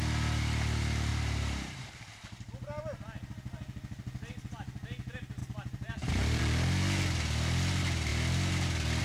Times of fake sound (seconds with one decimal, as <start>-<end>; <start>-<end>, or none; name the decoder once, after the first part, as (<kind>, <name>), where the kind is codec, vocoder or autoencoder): 1.1-2.5 (vocoder, BigVGAN v2); 5.4-6.4